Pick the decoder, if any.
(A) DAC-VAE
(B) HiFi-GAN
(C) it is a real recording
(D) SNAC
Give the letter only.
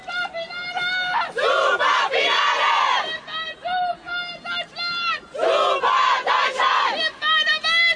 C